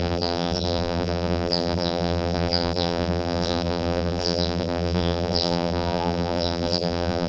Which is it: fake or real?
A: fake